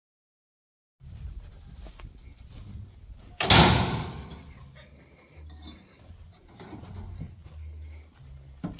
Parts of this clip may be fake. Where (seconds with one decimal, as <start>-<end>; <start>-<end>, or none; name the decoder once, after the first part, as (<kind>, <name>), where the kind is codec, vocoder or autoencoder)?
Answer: none